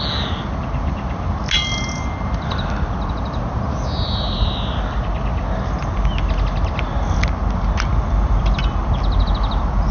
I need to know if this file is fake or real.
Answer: real